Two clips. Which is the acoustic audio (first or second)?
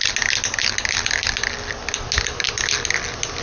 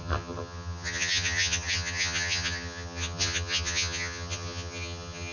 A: first